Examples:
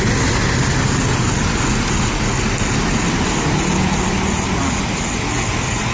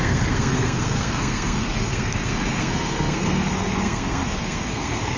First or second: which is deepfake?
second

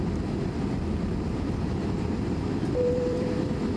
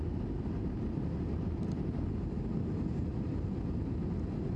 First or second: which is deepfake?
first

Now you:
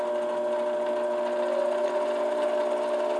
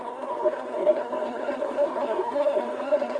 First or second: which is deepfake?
second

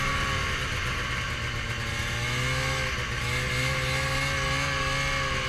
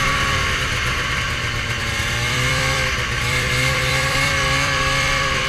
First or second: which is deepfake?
second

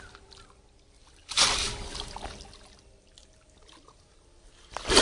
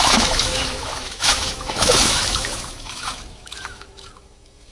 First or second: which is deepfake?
second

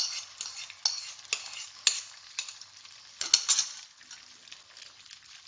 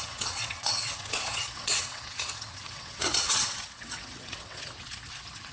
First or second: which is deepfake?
second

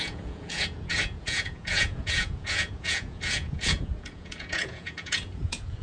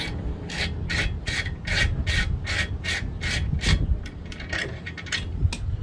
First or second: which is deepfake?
first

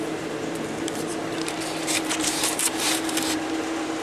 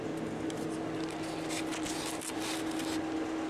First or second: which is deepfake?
first